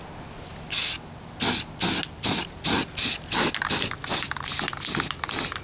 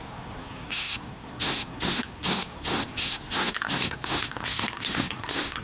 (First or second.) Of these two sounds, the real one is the first